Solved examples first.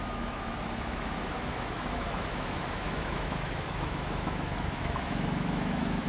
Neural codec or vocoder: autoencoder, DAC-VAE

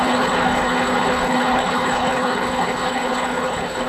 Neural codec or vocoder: codec, HILCodec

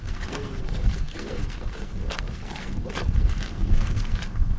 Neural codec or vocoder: codec, SNAC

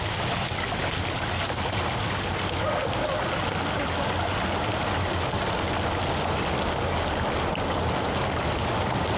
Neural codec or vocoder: none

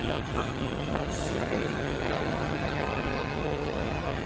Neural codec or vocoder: vocoder, HiFi-GAN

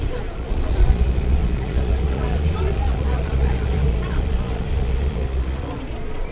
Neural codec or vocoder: vocoder, Vocos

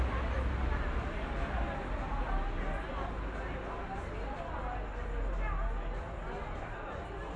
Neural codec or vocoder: none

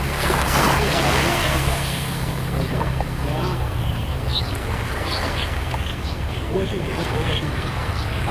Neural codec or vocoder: codec, SNAC